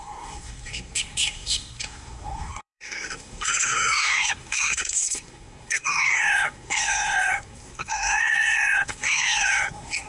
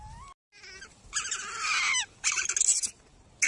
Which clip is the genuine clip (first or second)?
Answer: second